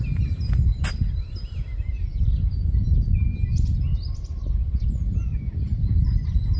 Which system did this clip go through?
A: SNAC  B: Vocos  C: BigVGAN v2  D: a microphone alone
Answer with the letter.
D